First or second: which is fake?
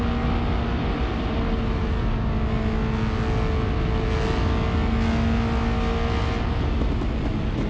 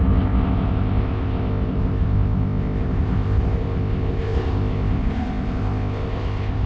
second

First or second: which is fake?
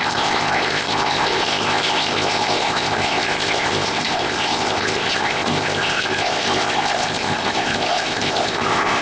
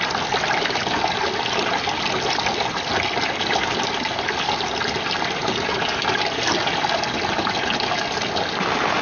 first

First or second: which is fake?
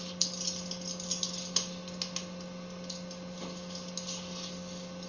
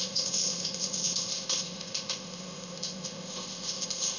second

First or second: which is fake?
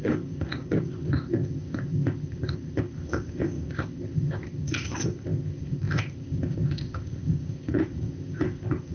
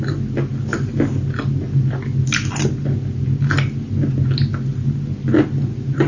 first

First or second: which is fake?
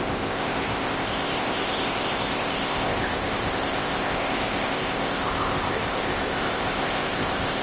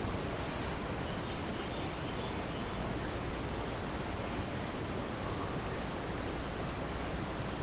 first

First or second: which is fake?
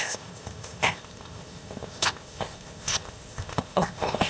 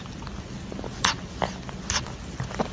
first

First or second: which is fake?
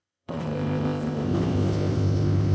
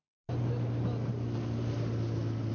first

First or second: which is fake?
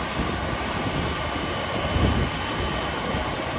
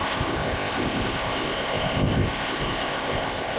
second